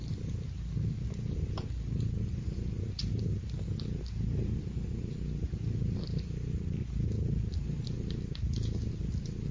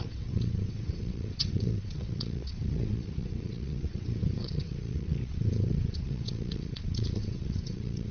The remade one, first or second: second